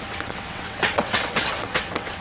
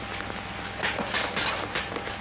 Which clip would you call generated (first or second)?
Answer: first